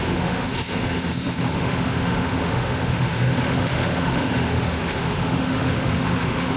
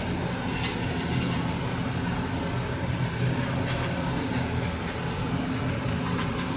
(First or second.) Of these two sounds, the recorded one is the second